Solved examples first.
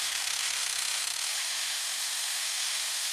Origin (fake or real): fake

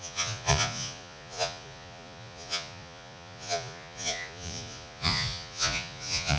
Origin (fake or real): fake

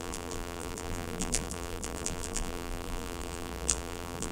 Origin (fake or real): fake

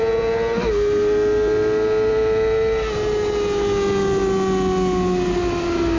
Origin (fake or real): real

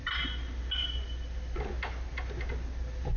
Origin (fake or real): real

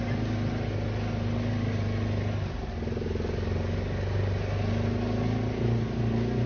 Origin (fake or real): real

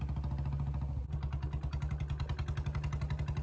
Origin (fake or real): real